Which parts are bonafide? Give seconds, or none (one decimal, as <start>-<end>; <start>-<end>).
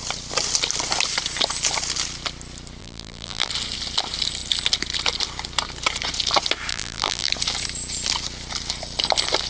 0.0-2.8; 3.5-6.7; 7.3-9.5